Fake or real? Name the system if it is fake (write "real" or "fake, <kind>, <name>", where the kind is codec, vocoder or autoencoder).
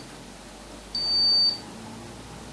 real